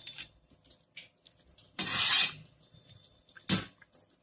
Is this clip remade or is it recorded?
recorded